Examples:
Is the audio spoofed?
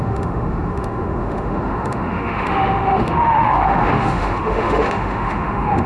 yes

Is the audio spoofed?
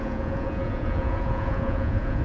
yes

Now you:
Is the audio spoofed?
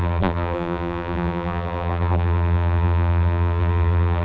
yes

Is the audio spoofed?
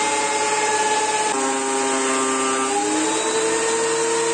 no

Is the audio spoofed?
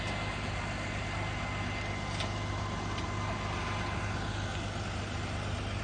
no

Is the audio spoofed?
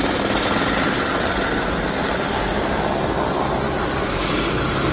no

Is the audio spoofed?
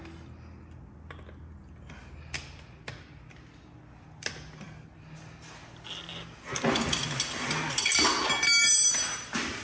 no